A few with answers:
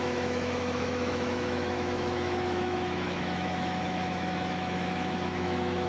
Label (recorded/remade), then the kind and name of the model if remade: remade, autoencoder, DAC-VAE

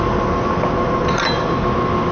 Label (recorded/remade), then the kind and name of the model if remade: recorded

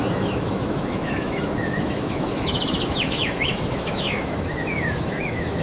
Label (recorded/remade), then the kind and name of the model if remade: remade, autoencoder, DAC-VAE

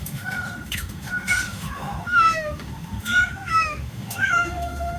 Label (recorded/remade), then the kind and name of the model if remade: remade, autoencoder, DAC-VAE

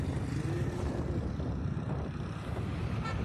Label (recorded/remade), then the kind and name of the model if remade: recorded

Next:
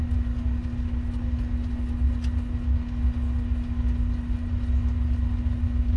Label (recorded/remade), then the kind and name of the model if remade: recorded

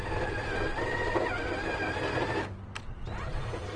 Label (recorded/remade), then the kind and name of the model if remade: recorded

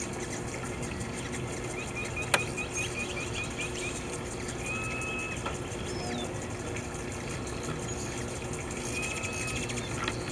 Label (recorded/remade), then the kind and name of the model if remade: recorded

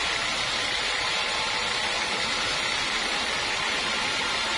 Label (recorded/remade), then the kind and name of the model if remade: recorded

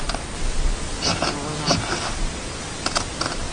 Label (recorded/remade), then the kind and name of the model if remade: recorded